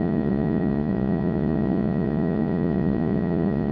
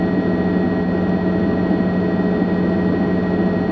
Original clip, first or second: second